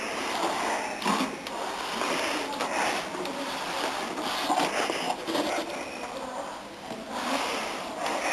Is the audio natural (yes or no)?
yes